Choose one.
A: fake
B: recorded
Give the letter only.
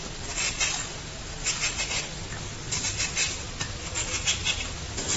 B